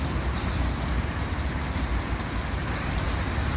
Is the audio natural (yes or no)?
yes